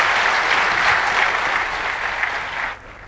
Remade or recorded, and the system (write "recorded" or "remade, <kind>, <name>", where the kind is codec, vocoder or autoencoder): recorded